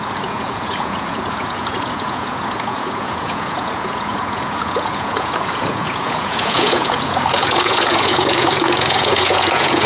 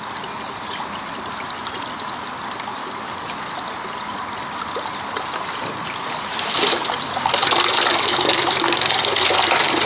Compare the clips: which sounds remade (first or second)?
first